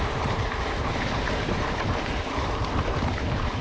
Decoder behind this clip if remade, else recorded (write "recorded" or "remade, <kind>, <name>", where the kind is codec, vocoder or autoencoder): remade, vocoder, BigVGAN v2